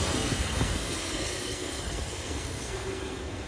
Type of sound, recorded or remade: remade